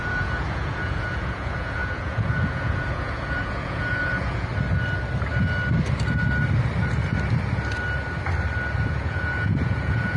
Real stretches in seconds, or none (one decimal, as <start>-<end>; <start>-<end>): 4.5-8.9